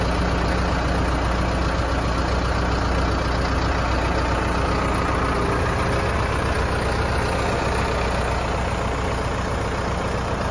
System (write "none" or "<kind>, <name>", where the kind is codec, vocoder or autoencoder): none